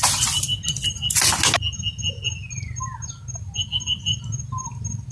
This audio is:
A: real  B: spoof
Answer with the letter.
A